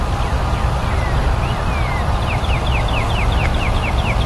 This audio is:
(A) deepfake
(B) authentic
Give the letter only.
B